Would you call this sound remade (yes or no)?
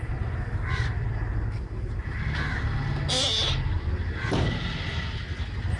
no